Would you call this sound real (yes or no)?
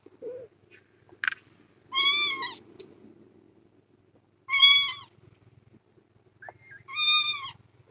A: yes